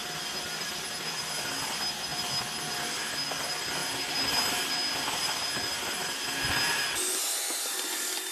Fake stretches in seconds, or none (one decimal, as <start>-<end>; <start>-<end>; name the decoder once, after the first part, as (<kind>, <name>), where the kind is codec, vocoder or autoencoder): none